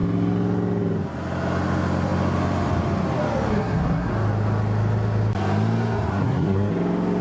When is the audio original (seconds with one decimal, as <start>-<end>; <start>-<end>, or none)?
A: 0.0-3.5; 4.1-6.1; 6.7-7.2